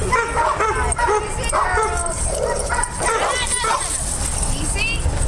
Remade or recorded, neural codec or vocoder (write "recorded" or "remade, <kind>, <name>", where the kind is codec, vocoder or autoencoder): recorded